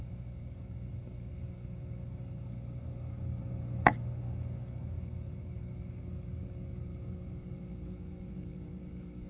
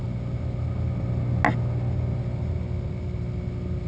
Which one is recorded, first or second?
second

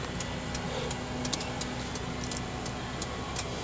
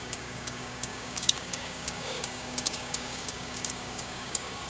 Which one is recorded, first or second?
first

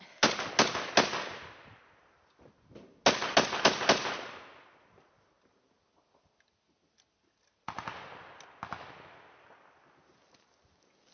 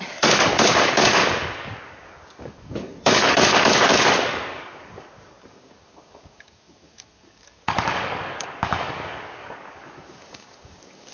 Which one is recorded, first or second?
first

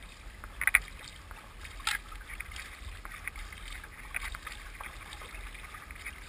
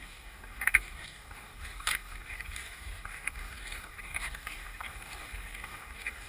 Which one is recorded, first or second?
first